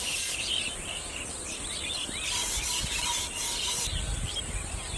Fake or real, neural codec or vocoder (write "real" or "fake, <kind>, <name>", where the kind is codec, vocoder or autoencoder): real